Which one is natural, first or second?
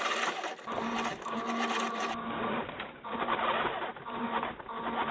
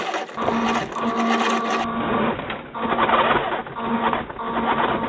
second